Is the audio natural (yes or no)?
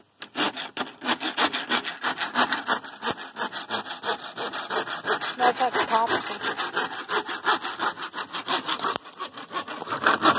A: yes